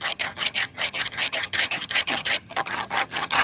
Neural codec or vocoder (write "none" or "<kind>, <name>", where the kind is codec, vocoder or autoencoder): vocoder, HiFi-GAN